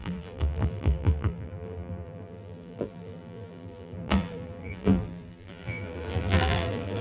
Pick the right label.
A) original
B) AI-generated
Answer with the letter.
B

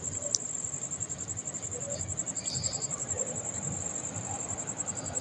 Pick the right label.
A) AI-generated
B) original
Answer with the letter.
B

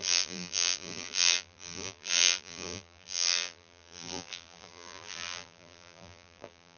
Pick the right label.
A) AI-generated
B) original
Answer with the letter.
A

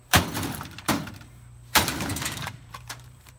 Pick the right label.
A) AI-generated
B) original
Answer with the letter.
A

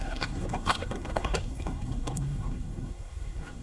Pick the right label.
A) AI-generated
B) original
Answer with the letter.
A